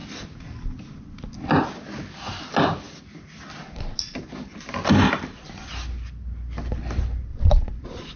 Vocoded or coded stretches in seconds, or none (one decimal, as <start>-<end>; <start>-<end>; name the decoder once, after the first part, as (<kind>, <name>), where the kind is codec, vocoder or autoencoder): 7.3-8.2 (vocoder, Vocos)